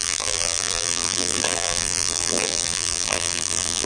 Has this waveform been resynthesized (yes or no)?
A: yes